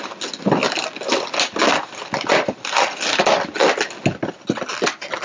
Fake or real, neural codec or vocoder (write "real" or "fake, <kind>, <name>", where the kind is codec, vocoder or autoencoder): real